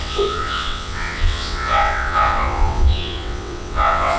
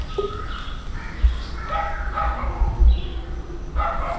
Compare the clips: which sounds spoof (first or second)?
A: first